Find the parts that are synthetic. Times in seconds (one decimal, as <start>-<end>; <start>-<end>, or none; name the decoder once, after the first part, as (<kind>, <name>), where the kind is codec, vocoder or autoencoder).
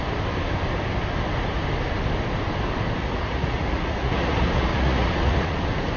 3.0-5.6 (vocoder, Vocos)